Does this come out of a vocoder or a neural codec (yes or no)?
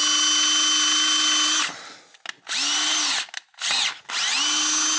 no